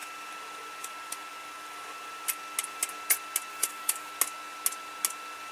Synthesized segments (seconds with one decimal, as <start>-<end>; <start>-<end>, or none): 3.5-4.1